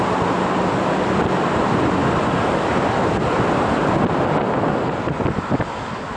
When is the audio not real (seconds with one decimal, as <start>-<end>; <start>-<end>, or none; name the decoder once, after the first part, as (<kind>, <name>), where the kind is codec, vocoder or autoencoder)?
none

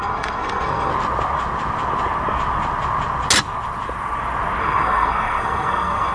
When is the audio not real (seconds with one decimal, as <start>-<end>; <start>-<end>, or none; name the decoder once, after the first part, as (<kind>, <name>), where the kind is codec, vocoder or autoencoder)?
0.0-0.9 (codec, SNAC); 4.6-6.1

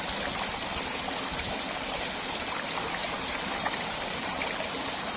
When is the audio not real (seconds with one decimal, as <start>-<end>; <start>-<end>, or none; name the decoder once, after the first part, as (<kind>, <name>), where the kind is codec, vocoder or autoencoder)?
3.0-4.3 (vocoder, BigVGAN v2)